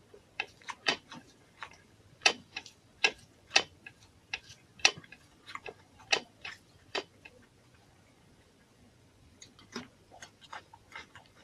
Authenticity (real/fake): fake